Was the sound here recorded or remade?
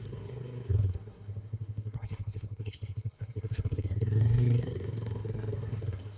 remade